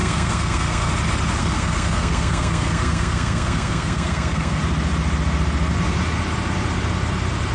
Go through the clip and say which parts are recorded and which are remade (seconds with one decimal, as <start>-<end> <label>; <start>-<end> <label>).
0.0-0.9 remade; 0.9-1.4 recorded; 1.4-4.6 remade; 4.6-7.5 recorded